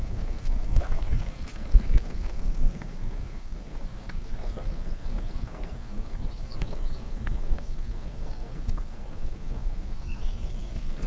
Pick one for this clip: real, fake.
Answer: fake